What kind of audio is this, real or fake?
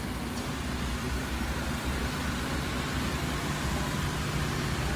real